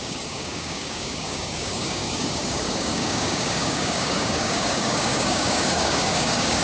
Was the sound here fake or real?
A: fake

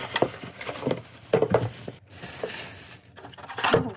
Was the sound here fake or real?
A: real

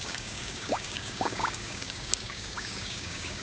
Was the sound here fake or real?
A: fake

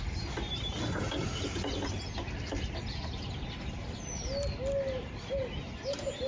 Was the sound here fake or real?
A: real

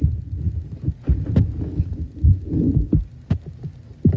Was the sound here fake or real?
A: real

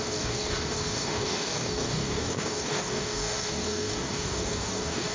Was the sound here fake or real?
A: fake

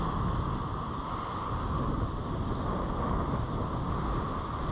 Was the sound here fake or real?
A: real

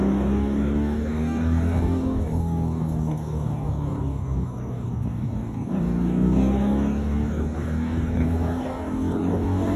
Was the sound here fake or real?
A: fake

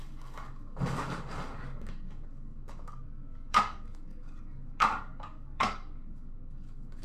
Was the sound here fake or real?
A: fake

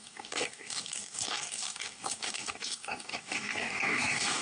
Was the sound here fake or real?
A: fake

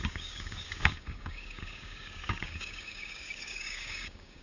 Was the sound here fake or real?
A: fake